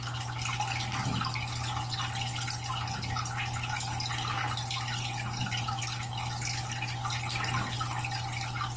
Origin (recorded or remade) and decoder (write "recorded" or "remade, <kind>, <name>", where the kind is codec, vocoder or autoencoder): recorded